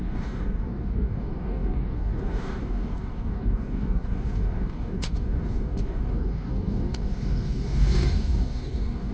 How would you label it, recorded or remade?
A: remade